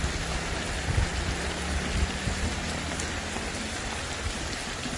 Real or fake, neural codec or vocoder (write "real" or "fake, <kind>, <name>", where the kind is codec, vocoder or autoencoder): real